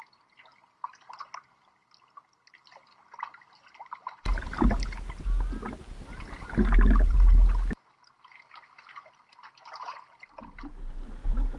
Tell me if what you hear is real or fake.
real